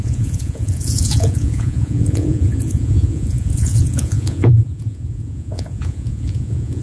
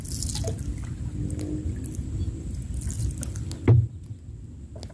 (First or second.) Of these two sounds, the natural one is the second